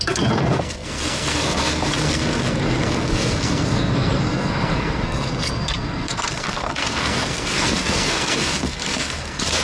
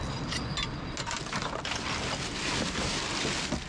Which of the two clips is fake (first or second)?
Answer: first